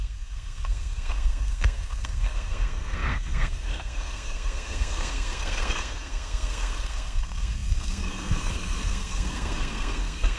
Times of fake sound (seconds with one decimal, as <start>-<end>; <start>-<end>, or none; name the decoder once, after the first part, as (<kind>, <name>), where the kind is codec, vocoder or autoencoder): 0.0-10.4 (codec, SNAC)